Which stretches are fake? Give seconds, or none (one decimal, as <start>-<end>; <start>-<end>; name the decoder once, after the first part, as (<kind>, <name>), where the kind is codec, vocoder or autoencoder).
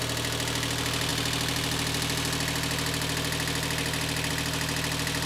none